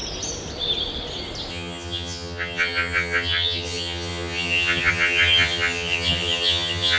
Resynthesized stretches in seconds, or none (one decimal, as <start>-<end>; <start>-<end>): 1.5-7.0